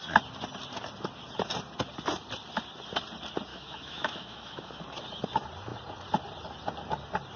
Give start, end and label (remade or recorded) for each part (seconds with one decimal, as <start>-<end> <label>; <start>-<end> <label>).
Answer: 0.0-3.5 recorded; 3.5-4.8 remade; 4.8-7.4 recorded